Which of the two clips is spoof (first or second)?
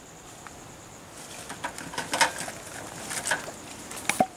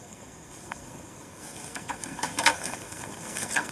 second